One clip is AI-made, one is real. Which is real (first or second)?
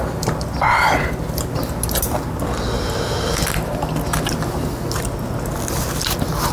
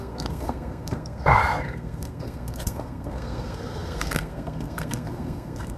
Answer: first